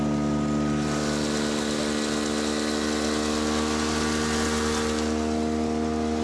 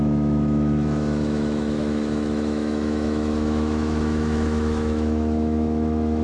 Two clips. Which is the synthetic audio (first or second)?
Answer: second